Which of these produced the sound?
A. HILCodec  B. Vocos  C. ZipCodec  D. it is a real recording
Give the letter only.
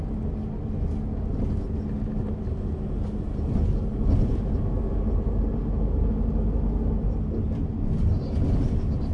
D